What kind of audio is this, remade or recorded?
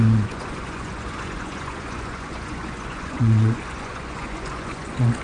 remade